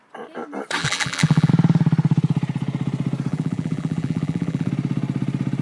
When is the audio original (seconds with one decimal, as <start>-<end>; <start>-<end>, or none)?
0.0-0.8; 1.5-3.3; 4.7-5.6